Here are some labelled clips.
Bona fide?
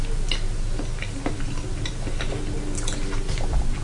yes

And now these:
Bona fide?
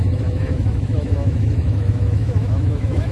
no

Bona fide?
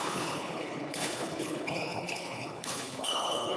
no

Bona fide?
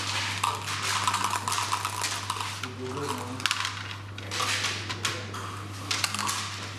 yes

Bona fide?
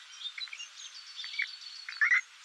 yes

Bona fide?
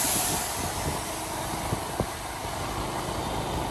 yes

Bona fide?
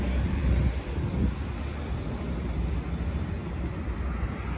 yes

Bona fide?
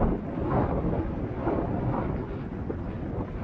yes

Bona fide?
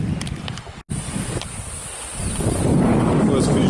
yes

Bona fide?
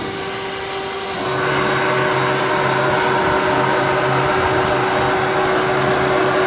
yes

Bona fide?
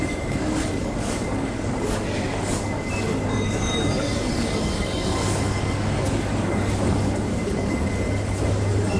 no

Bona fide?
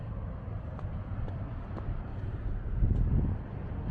yes